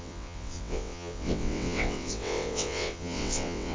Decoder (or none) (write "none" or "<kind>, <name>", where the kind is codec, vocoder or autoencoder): vocoder, WaveNeXt